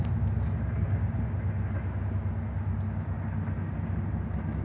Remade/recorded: recorded